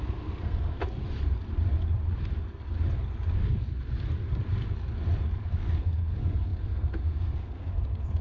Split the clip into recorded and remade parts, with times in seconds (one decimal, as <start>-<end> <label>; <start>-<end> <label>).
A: 0.0-0.8 remade; 0.8-5.4 recorded; 5.4-8.2 remade